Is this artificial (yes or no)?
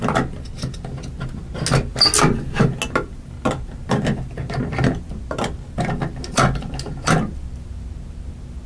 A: no